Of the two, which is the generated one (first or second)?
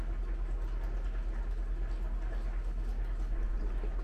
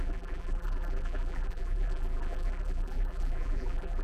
second